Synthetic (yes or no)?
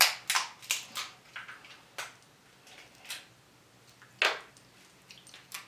no